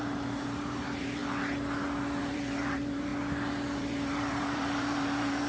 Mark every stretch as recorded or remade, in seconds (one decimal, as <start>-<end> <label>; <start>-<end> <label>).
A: 0.0-1.2 remade; 1.2-2.2 recorded; 2.2-3.1 remade; 3.1-3.8 recorded; 3.8-5.5 remade